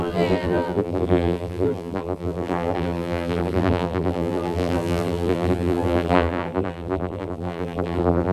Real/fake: fake